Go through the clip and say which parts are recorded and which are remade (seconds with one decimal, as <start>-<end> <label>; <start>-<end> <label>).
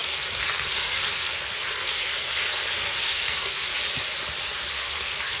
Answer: 0.0-3.7 remade; 3.7-4.7 recorded; 4.7-5.4 remade